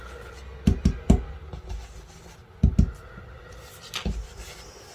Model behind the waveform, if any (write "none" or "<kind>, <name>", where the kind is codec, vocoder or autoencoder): none